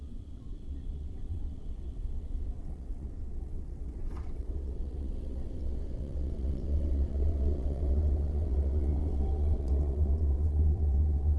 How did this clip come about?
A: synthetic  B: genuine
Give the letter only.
A